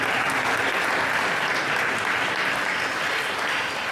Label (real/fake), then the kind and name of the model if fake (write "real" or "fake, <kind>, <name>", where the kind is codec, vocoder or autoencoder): real